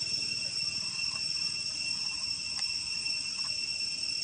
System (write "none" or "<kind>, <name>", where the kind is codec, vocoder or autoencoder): none